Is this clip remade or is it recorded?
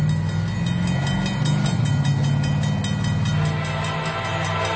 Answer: recorded